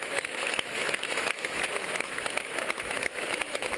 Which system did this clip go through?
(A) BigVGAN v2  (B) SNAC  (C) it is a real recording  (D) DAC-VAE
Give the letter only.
D